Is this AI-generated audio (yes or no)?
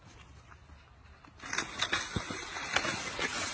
no